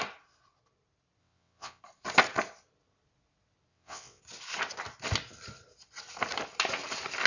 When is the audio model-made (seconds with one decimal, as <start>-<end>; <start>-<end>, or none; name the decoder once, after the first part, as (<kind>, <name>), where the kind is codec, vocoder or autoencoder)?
1.2-1.8 (vocoder, WaveNeXt); 3.7-4.2